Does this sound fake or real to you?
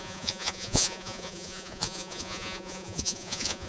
fake